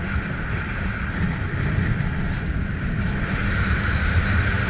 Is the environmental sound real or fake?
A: real